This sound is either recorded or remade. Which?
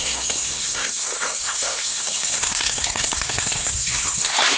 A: remade